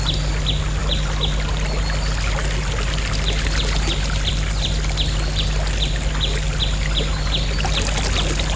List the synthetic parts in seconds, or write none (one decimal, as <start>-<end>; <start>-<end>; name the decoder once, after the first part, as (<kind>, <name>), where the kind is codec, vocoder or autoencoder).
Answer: none